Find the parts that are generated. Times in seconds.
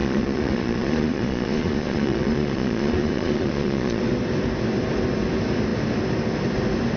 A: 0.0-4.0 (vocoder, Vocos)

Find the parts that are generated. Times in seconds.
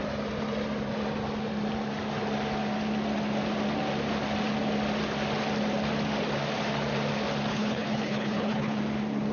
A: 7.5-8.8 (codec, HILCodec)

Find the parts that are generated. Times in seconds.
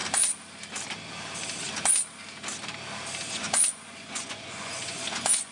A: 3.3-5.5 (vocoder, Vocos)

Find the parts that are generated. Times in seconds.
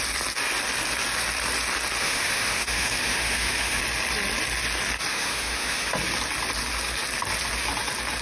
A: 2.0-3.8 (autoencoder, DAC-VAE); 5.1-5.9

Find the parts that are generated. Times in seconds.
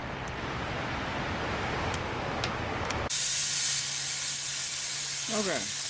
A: 0.0-3.5 (vocoder, BigVGAN v2); 4.6-5.4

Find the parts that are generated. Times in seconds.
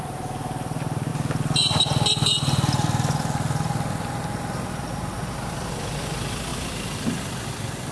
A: 6.5-7.5 (vocoder, BigVGAN v2)